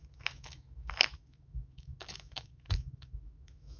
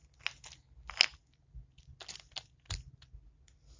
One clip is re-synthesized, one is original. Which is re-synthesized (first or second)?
first